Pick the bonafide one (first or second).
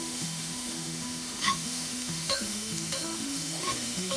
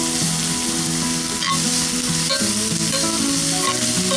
second